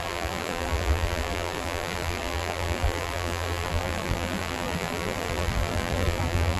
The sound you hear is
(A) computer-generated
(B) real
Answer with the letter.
A